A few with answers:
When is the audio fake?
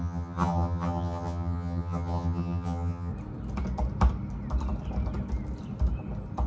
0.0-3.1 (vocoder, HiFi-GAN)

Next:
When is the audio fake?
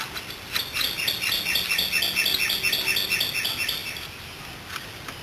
3.8-4.4 (vocoder, BigVGAN v2)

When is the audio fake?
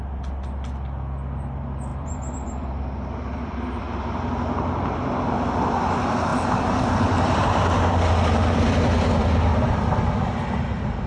1.9-3.8 (vocoder, BigVGAN v2); 6.3-8.0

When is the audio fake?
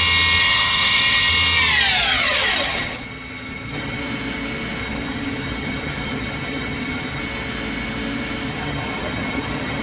0.4-1.3 (vocoder, HiFi-GAN); 2.1-4.0; 4.8-7.2; 8.5-9.8